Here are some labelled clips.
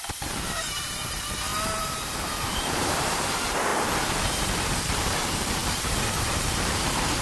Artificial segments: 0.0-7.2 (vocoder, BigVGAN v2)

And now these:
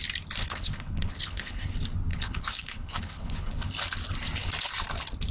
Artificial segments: 0.4-1.7 (codec, HILCodec); 2.1-3.7

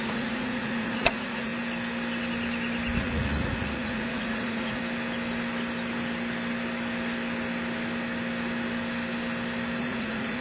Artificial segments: 0.0-1.5 (vocoder, Vocos); 3.0-4.8; 9.8-10.4

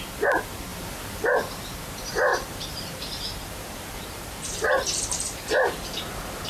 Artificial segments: 2.3-6.5 (vocoder, BigVGAN v2)

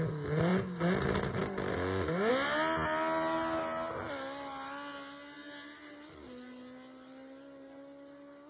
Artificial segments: none

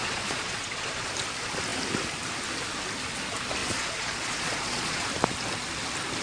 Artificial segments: 0.0-1.1 (vocoder, Vocos); 3.6-5.1

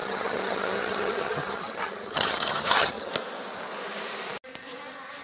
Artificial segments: 0.0-3.1 (vocoder, HiFi-GAN)